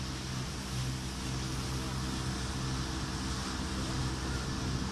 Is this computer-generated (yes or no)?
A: no